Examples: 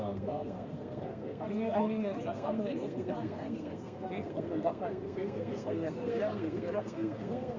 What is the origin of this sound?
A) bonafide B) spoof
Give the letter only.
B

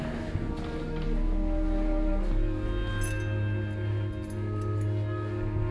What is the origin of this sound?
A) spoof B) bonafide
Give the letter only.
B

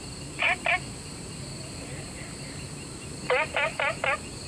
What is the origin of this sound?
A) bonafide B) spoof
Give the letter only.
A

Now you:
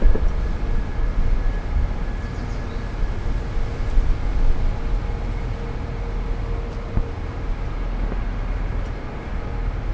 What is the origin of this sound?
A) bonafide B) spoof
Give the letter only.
A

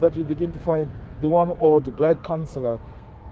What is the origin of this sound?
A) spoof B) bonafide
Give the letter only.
A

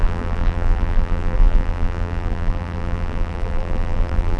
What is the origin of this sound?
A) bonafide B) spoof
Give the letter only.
B